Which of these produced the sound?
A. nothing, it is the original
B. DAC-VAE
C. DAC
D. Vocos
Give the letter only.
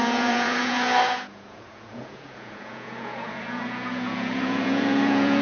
D